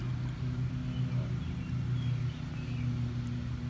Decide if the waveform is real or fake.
real